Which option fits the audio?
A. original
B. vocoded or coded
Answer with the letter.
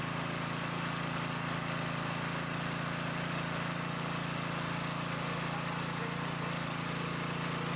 A